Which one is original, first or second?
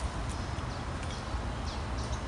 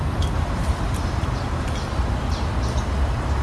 first